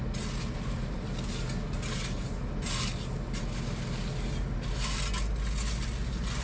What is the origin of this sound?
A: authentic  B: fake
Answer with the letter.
A